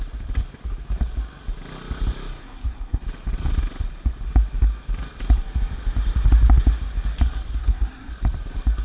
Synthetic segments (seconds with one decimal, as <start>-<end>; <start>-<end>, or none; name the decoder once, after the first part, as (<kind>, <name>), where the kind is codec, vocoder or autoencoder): 2.4-3.0 (codec, SNAC); 7.6-8.1